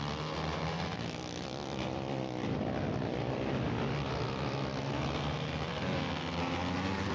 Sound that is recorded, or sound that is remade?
recorded